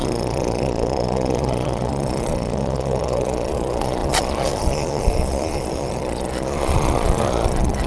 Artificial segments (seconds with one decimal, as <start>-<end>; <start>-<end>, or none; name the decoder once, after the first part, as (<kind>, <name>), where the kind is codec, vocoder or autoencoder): 0.0-7.9 (vocoder, Vocos)